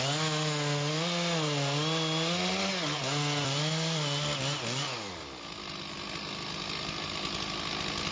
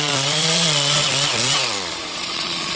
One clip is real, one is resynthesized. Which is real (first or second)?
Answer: first